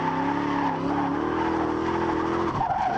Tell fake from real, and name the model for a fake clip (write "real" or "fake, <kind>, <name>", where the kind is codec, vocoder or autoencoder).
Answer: real